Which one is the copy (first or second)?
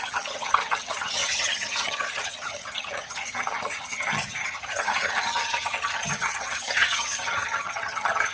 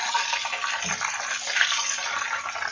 first